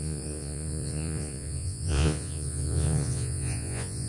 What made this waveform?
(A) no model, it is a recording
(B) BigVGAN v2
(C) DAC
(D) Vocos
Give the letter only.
D